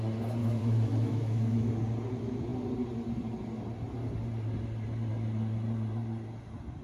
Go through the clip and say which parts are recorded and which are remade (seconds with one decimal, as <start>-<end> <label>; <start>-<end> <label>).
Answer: 0.0-0.4 recorded; 0.4-1.7 remade; 1.7-6.8 recorded